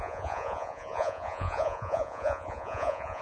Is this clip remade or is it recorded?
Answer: remade